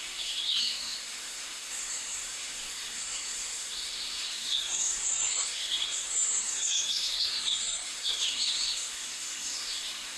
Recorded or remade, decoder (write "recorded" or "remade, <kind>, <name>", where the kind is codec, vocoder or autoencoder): remade, codec, SNAC